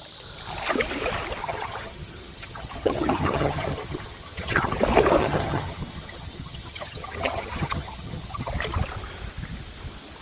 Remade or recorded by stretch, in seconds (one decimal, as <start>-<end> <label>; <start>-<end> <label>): 0.0-1.4 recorded; 1.4-4.8 remade; 4.8-5.2 recorded; 5.2-8.5 remade; 8.5-10.2 recorded